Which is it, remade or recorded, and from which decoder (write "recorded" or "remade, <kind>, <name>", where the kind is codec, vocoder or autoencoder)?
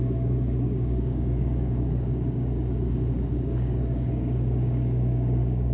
remade, codec, DAC